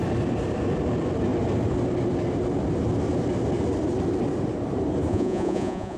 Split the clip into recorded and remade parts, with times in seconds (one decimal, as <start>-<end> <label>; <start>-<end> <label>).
0.0-5.1 recorded; 5.1-6.0 remade